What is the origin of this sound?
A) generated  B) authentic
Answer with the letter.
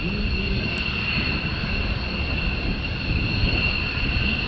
B